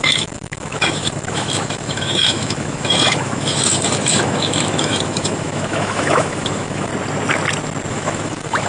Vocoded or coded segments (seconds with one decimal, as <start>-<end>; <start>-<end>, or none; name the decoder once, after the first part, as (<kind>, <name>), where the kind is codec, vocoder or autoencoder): 0.0-6.9 (autoencoder, DAC-VAE); 7.9-8.7